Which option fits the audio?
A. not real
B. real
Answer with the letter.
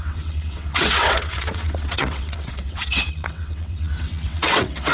A